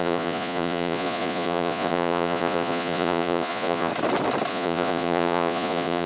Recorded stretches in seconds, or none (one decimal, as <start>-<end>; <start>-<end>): 3.9-4.5